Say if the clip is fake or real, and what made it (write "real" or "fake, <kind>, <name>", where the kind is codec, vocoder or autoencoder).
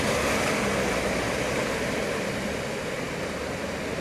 real